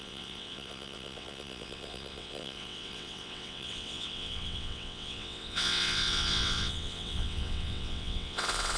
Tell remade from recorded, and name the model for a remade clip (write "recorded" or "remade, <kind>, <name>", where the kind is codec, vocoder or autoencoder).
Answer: remade, vocoder, WaveNeXt